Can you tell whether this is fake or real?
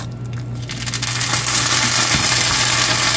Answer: real